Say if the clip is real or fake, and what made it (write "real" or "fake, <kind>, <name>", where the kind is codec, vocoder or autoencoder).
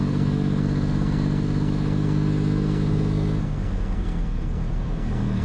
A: fake, codec, SNAC